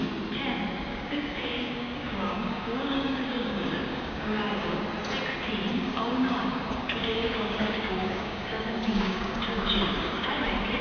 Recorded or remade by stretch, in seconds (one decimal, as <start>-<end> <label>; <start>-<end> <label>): 0.0-0.9 recorded; 0.9-4.8 remade; 4.8-5.7 recorded; 5.7-10.4 remade; 10.4-10.8 recorded